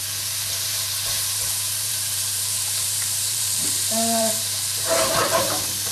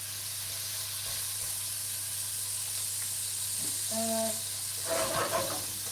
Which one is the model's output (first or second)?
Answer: first